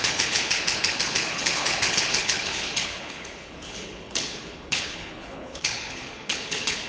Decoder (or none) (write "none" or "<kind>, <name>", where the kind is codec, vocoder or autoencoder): codec, HILCodec